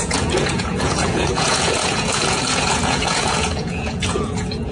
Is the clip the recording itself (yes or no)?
no